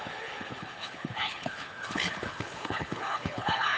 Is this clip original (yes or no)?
no